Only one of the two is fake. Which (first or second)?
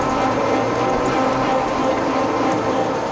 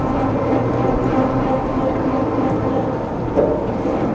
second